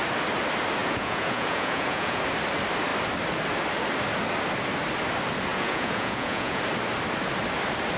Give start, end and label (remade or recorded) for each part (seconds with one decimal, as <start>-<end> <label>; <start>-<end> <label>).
0.0-0.8 recorded; 0.8-2.2 remade; 2.2-5.5 recorded; 5.5-6.6 remade; 6.6-8.0 recorded